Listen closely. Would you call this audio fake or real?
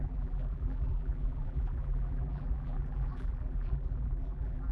fake